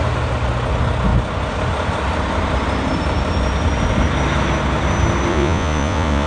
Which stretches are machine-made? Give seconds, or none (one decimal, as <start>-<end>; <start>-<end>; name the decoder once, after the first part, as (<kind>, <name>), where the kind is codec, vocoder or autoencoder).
5.3-6.3 (vocoder, Vocos)